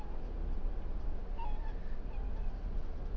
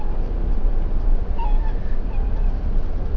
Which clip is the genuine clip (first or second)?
first